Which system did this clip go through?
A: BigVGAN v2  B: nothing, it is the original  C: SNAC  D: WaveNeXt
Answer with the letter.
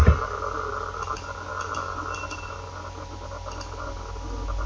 B